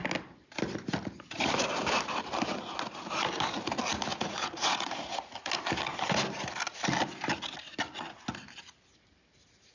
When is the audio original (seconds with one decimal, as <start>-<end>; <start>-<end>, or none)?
0.0-4.1; 5.5-9.7